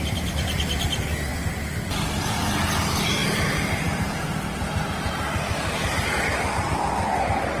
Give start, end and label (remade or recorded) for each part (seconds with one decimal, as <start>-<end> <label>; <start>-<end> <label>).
0.0-3.2 recorded; 3.2-4.3 remade; 4.3-7.6 recorded